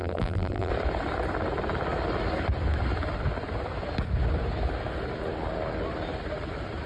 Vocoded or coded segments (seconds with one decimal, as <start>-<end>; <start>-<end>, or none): 0.0-0.7